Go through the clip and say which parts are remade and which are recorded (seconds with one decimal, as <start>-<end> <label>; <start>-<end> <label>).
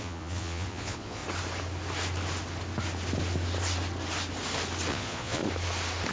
0.0-1.2 remade; 1.2-4.9 recorded; 4.9-5.4 remade; 5.4-6.1 recorded